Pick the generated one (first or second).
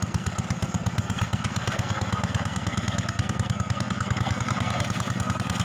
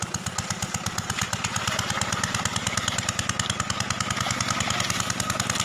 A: first